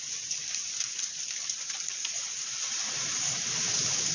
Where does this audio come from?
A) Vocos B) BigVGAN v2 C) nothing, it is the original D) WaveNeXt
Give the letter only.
B